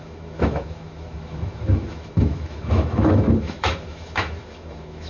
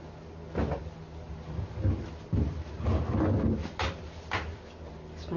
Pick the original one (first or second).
second